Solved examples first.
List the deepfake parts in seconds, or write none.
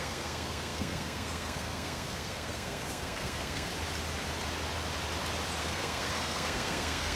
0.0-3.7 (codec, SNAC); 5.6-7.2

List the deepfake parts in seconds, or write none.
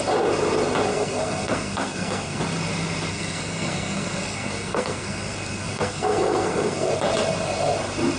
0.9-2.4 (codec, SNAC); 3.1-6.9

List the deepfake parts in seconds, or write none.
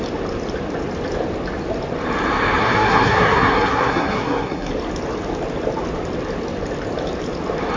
2.6-4.7 (codec, SNAC)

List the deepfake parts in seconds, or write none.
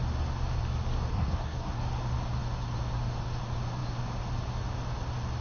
1.1-1.8 (codec, SNAC)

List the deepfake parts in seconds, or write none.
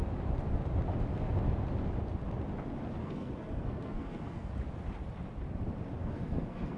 3.0-4.5 (codec, SNAC); 6.0-6.8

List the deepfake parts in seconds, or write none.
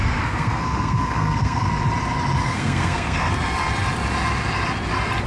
0.0-1.7 (codec, SNAC); 2.4-3.3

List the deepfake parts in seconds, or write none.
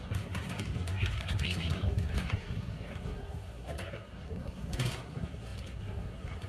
0.0-6.5 (codec, SNAC)